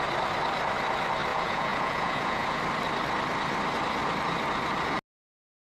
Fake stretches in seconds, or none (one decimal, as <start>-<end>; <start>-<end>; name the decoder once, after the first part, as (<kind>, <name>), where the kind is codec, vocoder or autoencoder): 1.3-2.6 (vocoder, Vocos)